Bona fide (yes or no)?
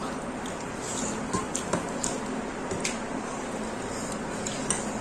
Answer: yes